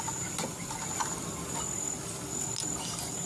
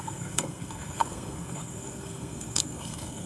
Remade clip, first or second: second